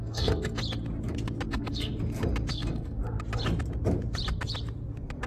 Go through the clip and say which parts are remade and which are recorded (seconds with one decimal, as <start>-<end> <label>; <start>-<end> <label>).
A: 0.0-0.6 remade; 0.6-1.5 recorded; 1.5-1.9 remade; 1.9-2.5 recorded; 2.5-3.0 remade; 3.0-5.3 recorded